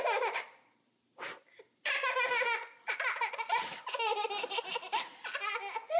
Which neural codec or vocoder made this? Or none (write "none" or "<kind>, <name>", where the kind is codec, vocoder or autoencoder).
none